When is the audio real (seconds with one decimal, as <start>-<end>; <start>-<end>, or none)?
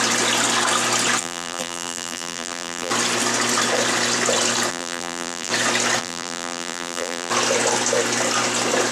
0.0-1.2; 2.9-4.7; 5.5-6.0; 7.3-8.9